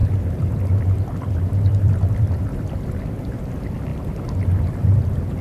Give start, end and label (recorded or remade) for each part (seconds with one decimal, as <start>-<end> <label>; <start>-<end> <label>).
0.0-2.8 remade; 2.8-3.9 recorded; 3.9-4.4 remade; 4.4-5.4 recorded